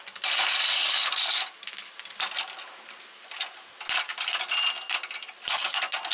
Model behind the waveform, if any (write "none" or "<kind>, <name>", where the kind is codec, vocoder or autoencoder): none